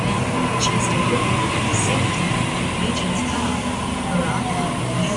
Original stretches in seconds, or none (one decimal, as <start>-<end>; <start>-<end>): 0.0-5.2